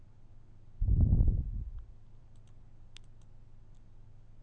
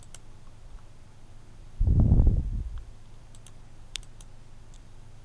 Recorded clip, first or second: first